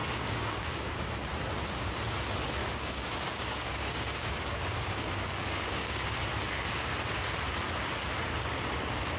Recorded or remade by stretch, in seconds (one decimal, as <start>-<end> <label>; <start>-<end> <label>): 0.0-0.9 remade; 0.9-2.6 recorded; 2.6-6.2 remade; 6.2-9.2 recorded